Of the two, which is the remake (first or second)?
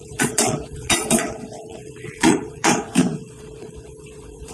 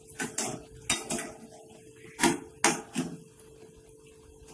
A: first